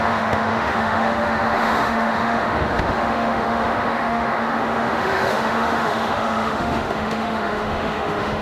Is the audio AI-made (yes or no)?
yes